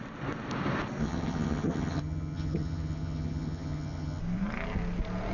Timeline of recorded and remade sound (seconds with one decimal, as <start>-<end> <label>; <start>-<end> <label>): 0.0-1.0 recorded; 1.0-4.2 remade; 4.2-5.3 recorded